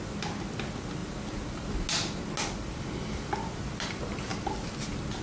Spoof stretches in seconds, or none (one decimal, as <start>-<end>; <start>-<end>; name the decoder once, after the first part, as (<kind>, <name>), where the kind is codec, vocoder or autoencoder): none